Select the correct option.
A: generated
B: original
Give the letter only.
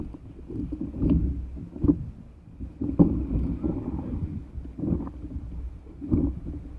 B